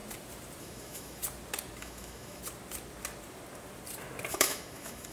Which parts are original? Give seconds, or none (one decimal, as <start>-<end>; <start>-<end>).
0.0-0.6; 1.2-1.8; 2.4-4.3